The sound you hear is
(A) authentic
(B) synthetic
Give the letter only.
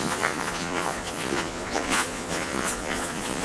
B